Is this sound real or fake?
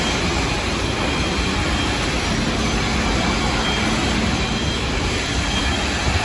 real